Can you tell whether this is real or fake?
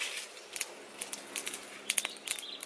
real